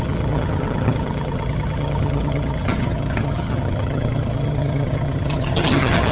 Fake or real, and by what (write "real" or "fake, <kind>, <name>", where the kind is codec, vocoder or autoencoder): fake, vocoder, HiFi-GAN